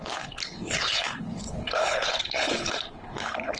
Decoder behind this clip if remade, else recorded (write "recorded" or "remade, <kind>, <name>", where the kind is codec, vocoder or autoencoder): remade, codec, HILCodec